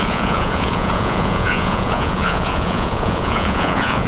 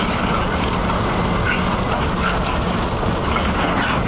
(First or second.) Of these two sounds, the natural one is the second